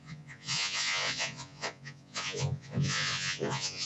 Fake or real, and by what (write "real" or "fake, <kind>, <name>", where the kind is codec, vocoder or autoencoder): fake, vocoder, Vocos